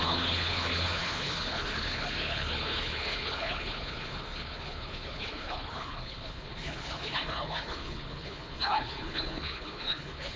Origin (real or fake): fake